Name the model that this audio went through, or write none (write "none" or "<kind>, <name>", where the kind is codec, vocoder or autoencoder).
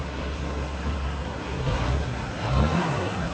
codec, SNAC